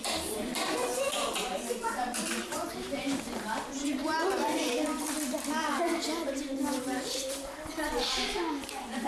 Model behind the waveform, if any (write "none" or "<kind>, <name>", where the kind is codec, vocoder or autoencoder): vocoder, BigVGAN v2